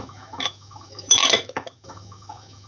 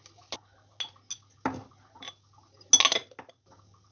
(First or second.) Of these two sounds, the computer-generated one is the first